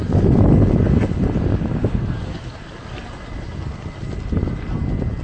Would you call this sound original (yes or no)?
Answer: yes